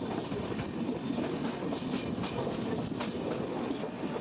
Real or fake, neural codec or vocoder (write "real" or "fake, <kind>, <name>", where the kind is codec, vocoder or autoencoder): real